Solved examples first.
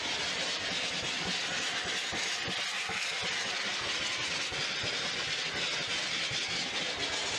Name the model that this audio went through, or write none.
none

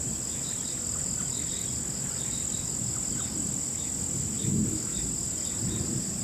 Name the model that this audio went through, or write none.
none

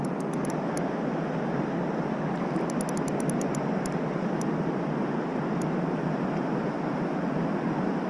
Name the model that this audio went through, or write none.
none